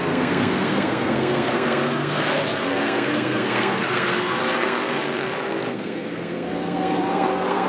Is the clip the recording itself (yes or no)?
no